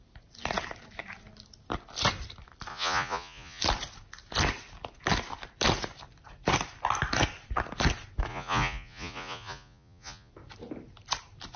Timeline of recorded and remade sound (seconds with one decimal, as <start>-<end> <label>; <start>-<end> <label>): 0.0-2.7 recorded; 2.7-3.6 remade; 3.6-8.3 recorded; 8.3-10.3 remade; 10.3-11.6 recorded